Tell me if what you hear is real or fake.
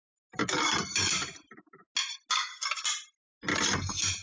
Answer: real